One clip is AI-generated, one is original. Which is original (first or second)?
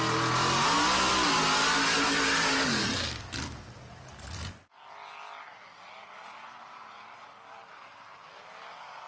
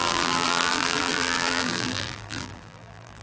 first